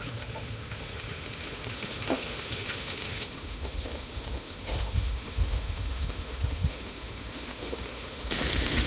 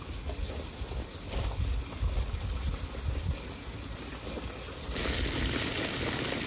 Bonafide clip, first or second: second